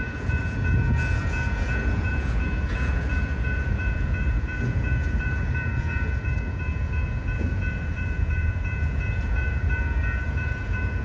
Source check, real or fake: fake